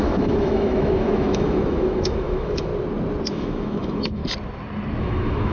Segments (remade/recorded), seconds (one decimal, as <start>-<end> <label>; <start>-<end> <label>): 0.0-2.7 remade; 2.7-3.3 recorded; 3.3-4.2 remade; 4.2-5.0 recorded; 5.0-5.5 remade